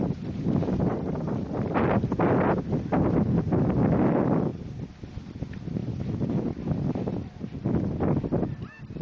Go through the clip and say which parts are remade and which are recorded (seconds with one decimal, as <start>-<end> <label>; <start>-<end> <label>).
0.0-9.0 recorded